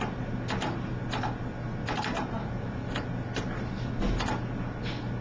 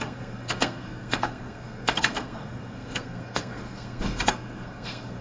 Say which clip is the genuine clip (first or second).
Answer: first